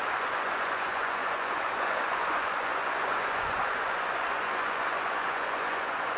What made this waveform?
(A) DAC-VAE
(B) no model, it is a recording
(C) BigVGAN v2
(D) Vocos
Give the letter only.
D